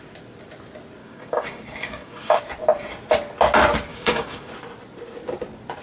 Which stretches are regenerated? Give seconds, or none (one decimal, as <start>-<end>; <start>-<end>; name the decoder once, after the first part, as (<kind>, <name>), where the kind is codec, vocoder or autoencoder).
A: 1.0-2.4 (codec, DAC); 3.9-4.5

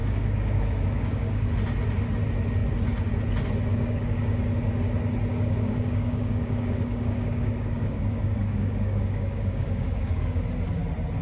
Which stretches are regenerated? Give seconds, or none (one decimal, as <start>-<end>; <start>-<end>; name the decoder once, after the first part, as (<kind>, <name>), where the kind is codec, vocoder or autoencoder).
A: 0.0-1.5 (codec, DAC); 3.7-4.4; 5.3-10.4

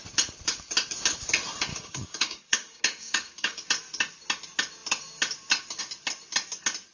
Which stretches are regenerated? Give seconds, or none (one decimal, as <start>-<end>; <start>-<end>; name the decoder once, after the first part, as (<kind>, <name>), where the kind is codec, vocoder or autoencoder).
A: 1.7-3.7 (codec, DAC)

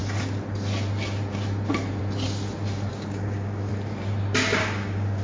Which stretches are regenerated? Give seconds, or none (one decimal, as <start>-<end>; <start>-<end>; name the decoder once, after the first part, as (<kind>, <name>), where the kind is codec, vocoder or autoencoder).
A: 2.9-3.7 (codec, DAC); 4.5-5.2

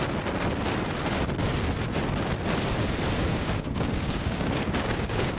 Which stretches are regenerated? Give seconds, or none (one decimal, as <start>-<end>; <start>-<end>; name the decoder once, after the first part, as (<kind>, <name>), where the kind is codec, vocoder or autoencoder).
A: 3.3-5.4 (codec, DAC)

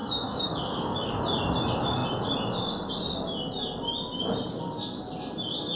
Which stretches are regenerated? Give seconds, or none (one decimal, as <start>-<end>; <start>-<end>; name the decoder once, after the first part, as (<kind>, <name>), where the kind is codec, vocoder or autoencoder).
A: 0.0-1.1 (codec, DAC)